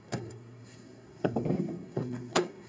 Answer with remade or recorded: remade